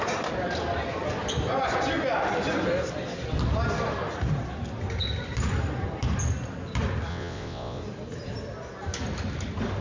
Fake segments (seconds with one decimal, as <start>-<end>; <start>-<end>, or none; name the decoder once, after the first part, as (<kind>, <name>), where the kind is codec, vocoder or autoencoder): 7.1-7.8 (vocoder, WaveNeXt)